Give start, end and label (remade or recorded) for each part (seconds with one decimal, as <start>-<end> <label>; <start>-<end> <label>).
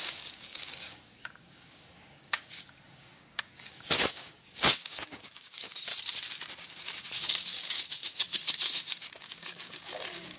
0.0-5.9 remade; 5.9-6.6 recorded; 6.6-10.4 remade